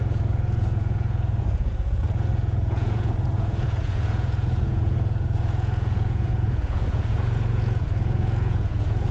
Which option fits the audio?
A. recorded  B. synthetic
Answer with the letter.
B